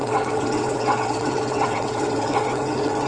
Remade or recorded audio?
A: remade